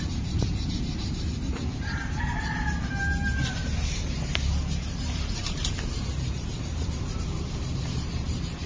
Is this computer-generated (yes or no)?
yes